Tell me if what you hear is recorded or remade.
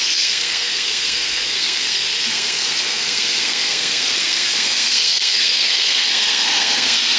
remade